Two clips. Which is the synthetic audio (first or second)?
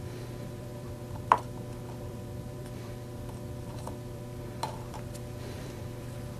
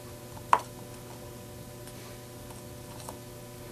first